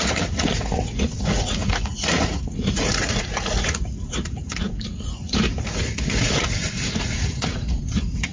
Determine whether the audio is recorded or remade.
remade